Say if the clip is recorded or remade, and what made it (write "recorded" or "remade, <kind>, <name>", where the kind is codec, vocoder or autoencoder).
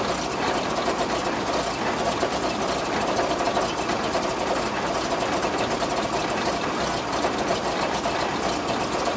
recorded